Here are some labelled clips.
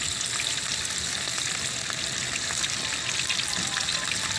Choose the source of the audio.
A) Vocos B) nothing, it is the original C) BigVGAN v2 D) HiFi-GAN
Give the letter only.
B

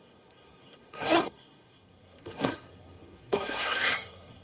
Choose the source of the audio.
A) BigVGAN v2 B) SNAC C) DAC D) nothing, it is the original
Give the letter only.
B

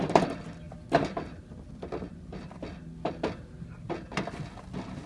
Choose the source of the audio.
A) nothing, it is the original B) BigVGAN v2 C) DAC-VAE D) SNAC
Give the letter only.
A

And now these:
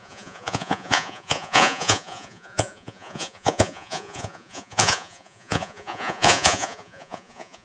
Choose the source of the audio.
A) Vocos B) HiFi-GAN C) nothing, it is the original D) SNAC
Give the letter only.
A